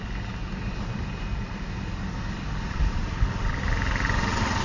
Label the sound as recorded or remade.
recorded